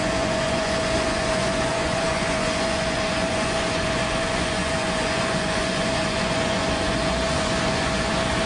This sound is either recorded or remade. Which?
remade